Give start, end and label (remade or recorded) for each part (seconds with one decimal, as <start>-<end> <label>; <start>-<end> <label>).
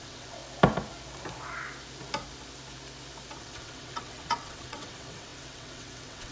0.0-0.4 remade; 0.4-3.4 recorded; 3.4-6.3 remade